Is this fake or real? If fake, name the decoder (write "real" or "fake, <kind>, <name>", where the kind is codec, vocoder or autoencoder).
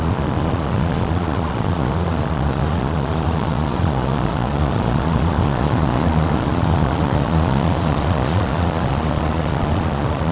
fake, vocoder, Vocos